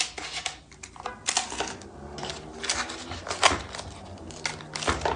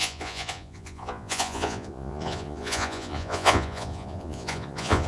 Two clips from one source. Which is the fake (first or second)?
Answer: second